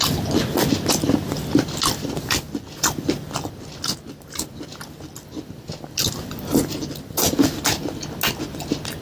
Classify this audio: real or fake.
real